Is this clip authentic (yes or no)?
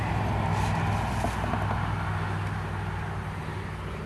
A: yes